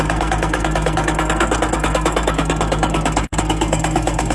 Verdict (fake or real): fake